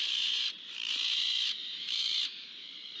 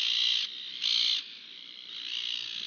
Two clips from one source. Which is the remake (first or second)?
first